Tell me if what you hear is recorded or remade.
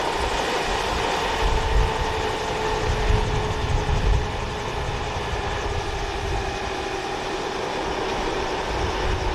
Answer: recorded